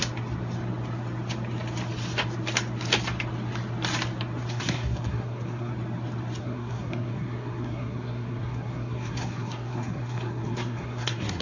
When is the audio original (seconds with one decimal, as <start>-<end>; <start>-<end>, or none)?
0.0-4.5; 5.7-6.4